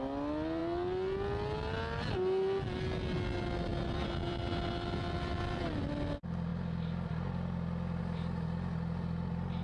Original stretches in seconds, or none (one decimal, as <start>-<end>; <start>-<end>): 0.0-9.6